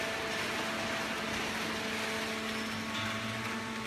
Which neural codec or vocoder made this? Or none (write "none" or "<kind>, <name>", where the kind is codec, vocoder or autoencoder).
none